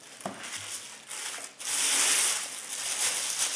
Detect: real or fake real